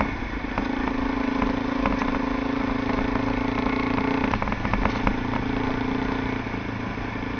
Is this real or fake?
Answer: real